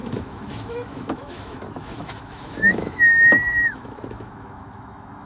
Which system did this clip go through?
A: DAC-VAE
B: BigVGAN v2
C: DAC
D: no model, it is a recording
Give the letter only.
A